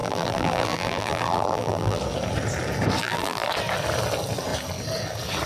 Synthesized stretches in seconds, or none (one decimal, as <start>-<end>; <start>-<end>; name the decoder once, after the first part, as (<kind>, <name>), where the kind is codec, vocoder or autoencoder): 0.0-2.0 (vocoder, BigVGAN v2); 3.0-3.5